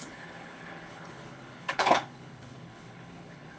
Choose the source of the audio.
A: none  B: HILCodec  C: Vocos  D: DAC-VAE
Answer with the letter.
B